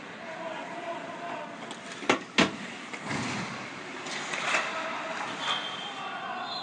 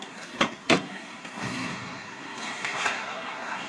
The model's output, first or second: second